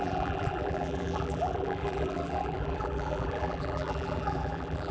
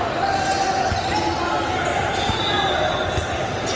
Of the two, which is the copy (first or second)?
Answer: first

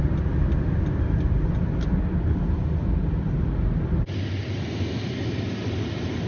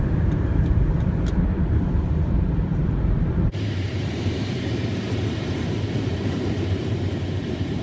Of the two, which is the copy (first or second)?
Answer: second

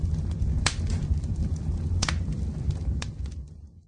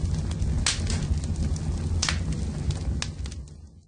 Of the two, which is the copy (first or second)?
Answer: first